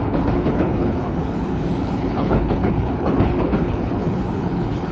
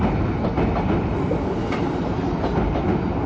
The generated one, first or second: first